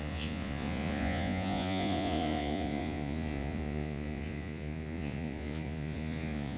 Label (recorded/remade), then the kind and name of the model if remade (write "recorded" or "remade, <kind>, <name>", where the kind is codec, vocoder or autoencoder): remade, vocoder, Vocos